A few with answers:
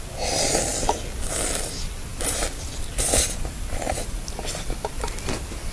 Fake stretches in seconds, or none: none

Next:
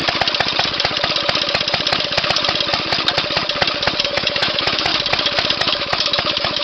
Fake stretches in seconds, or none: 4.0-4.9; 5.6-6.6

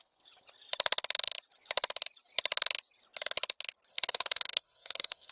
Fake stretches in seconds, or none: 3.9-5.3

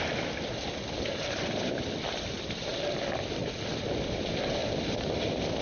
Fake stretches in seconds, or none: none

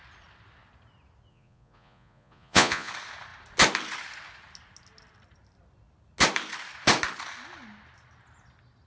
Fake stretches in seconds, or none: 1.3-2.9

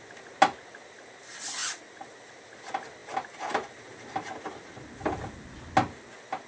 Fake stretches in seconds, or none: none